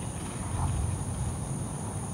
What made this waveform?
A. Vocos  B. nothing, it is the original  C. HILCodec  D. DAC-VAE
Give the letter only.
B